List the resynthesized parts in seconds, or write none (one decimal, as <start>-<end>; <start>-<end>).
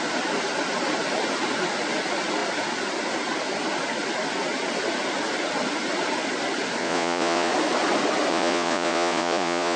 6.8-7.5; 8.3-9.8